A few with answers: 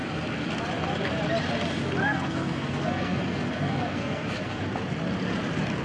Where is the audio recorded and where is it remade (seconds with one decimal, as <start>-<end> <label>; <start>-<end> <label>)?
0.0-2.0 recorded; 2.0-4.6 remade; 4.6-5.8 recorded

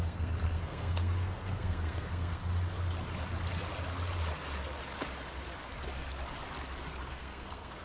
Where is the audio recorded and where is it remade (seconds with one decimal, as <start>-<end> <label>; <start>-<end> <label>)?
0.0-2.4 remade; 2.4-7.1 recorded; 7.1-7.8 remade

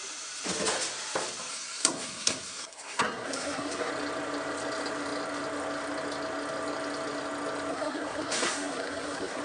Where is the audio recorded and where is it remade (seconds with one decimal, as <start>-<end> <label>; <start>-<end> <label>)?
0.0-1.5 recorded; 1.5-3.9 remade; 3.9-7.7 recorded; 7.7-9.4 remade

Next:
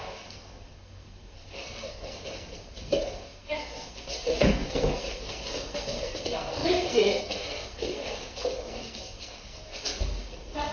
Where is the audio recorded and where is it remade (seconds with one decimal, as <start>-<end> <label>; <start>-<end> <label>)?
0.0-10.7 remade